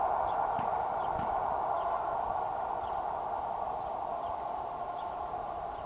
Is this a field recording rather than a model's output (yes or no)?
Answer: yes